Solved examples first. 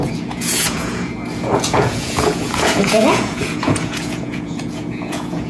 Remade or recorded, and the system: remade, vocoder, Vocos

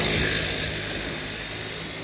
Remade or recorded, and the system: recorded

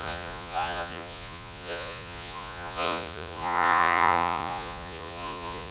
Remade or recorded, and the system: remade, vocoder, Vocos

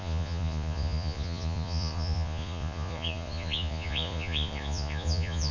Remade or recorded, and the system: remade, vocoder, Vocos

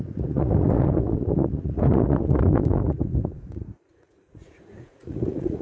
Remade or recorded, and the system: remade, vocoder, Vocos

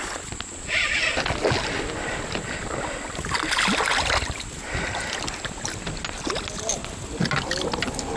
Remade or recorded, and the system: recorded